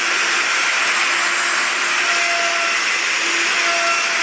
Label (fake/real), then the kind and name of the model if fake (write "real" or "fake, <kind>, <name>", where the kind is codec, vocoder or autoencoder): real